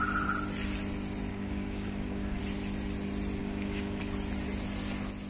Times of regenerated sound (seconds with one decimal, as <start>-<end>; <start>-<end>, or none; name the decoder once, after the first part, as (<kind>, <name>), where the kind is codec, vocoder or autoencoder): 1.3-2.4 (codec, DAC); 3.4-4.0